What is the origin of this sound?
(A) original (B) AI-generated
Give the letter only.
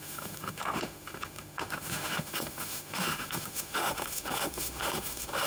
B